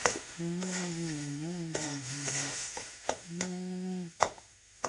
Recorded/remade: remade